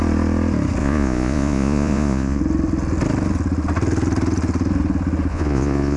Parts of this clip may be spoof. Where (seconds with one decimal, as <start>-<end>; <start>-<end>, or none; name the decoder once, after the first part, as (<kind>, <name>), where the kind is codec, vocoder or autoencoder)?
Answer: 0.8-2.4 (vocoder, Vocos); 5.3-6.0